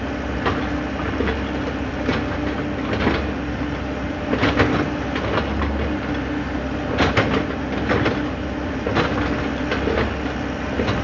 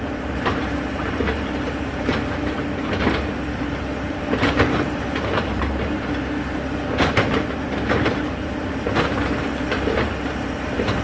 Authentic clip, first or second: first